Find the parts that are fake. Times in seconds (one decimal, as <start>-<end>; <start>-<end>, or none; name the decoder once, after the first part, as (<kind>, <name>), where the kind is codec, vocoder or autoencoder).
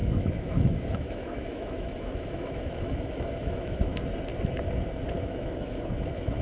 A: 0.0-3.9 (autoencoder, DAC-VAE); 5.2-6.4